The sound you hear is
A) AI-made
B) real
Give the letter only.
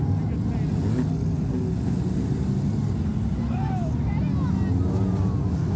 B